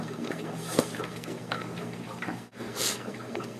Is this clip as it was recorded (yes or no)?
no